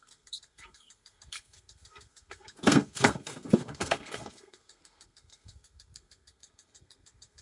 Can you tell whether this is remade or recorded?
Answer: remade